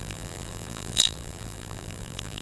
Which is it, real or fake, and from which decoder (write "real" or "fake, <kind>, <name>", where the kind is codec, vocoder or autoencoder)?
fake, vocoder, BigVGAN v2